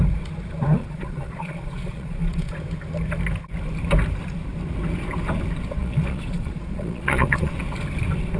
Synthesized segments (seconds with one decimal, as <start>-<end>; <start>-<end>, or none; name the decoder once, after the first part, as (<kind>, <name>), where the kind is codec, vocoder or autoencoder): 0.8-2.6 (vocoder, Vocos); 5.8-7.5